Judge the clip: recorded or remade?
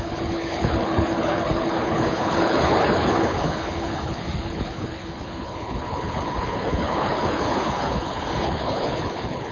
remade